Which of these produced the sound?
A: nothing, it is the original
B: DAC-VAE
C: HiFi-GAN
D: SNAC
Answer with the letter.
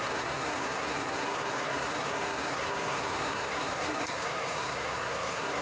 D